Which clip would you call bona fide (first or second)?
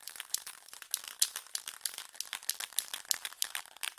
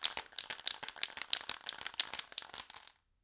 second